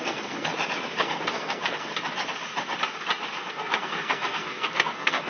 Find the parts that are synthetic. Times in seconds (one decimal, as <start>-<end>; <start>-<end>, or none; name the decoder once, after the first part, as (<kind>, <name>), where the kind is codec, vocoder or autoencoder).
0.0-0.5 (codec, SNAC); 1.0-1.9; 3.5-5.3